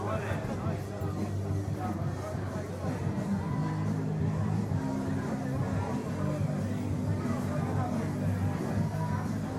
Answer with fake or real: real